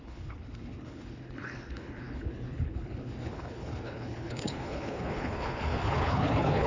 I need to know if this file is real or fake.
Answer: fake